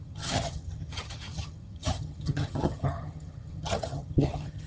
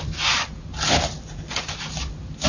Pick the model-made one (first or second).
first